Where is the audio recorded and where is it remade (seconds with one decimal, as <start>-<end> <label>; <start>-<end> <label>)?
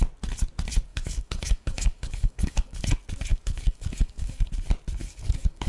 0.0-0.9 recorded; 0.9-2.8 remade; 2.8-3.3 recorded; 3.3-4.5 remade; 4.5-5.0 recorded; 5.0-5.7 remade